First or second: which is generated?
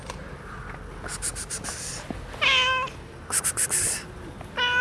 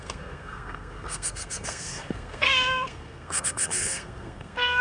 second